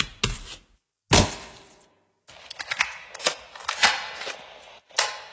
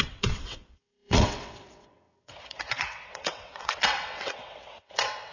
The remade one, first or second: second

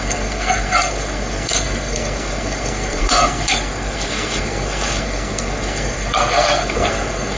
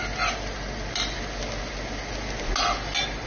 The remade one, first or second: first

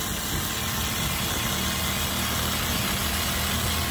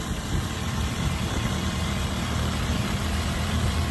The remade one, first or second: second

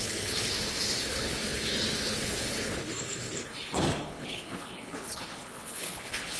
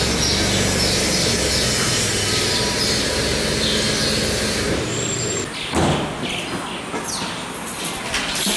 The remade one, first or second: first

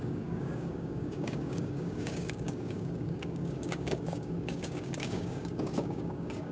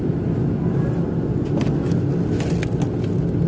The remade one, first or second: first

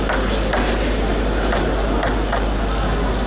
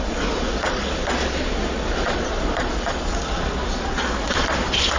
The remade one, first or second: second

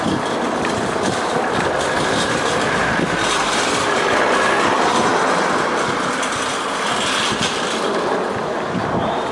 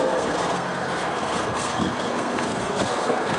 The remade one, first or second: second